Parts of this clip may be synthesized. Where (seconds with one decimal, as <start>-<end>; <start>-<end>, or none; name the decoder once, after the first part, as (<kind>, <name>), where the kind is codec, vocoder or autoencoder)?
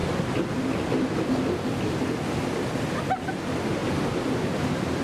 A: none